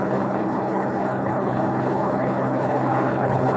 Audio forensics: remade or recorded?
remade